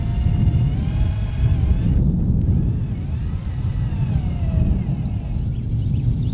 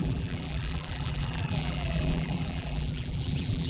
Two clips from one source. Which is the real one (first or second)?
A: first